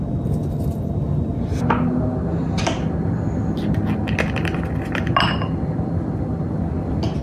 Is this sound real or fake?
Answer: real